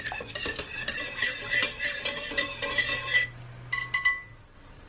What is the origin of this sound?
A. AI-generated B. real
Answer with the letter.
B